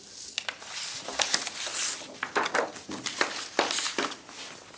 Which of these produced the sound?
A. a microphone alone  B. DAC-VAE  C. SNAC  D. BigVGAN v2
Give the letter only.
A